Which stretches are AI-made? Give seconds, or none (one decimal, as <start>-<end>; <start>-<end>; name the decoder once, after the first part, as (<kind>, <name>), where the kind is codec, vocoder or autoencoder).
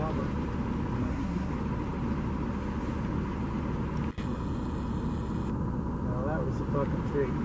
1.0-1.5 (codec, SNAC)